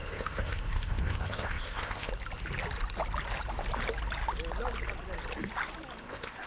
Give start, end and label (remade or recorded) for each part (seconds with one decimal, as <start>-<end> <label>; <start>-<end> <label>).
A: 0.0-2.1 remade; 2.1-6.0 recorded; 6.0-6.5 remade